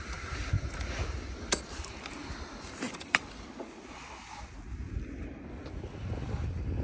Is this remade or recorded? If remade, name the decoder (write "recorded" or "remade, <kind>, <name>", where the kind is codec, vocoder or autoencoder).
recorded